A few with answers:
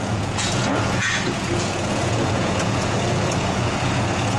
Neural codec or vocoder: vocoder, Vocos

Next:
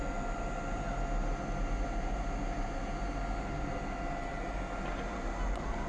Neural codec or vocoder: none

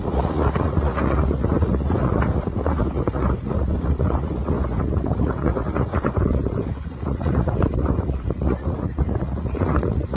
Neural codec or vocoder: vocoder, Vocos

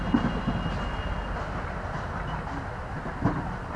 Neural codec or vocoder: none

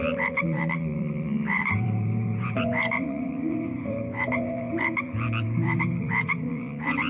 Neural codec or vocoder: vocoder, Vocos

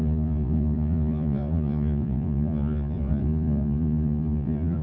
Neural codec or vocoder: vocoder, Vocos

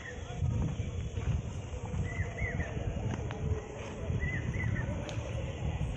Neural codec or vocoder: none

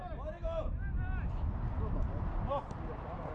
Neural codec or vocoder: none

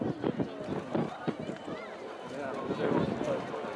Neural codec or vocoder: none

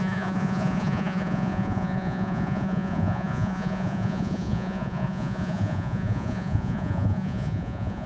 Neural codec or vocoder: vocoder, Vocos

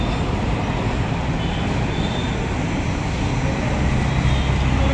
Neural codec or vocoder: none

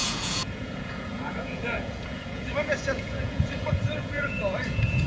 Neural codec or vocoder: vocoder, Vocos